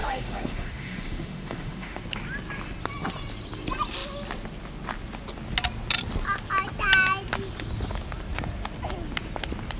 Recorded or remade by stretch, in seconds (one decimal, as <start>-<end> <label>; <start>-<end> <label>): 0.0-2.0 remade; 2.0-9.8 recorded